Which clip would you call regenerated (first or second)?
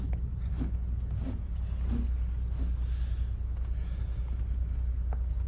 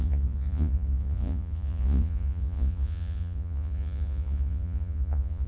second